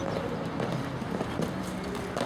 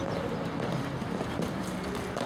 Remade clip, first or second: second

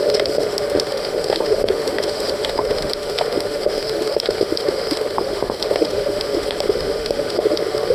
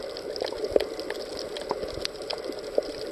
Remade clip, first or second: first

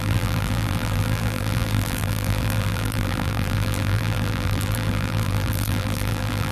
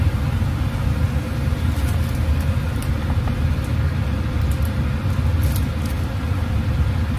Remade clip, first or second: first